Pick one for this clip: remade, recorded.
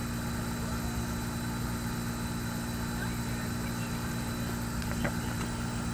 remade